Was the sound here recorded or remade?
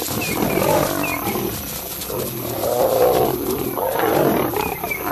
recorded